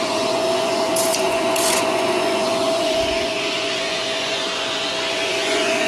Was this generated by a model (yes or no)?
yes